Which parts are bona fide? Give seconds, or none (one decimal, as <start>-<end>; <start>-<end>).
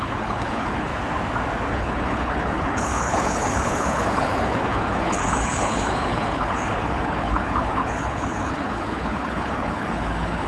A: 0.9-1.7